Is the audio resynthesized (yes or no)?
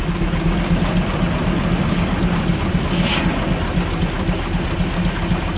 no